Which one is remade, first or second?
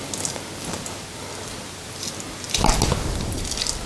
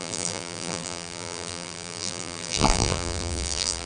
second